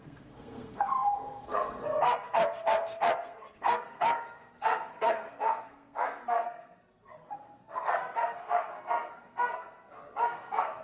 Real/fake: fake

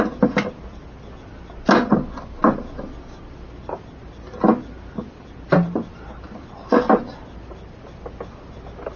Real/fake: real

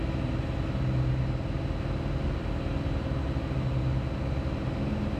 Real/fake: real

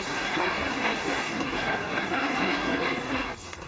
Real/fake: fake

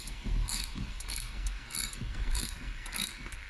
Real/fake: fake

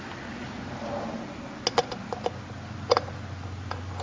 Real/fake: real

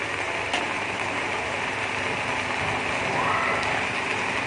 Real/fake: real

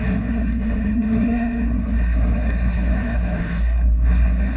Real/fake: fake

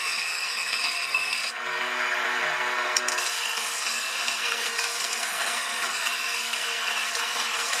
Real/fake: fake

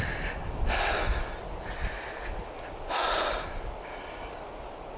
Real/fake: real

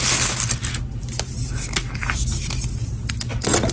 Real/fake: real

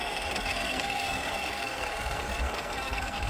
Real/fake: fake